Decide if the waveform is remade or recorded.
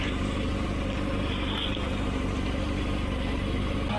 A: recorded